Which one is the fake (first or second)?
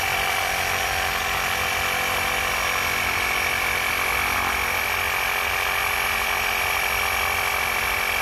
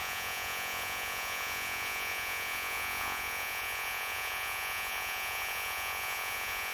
second